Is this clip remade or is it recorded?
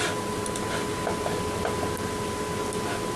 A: recorded